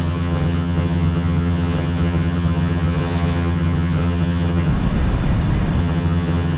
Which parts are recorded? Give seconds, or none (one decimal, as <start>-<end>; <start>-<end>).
4.7-5.8